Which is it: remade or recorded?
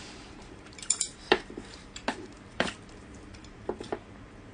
remade